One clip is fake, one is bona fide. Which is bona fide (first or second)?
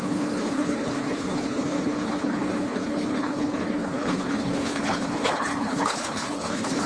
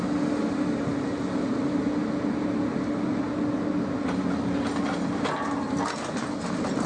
second